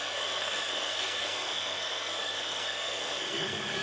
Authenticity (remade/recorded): remade